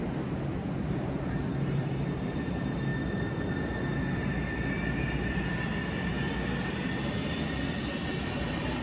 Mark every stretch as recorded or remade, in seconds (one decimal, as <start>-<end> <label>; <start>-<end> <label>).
0.0-2.9 remade; 2.9-8.2 recorded; 8.2-8.8 remade